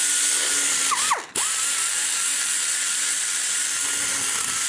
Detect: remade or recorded recorded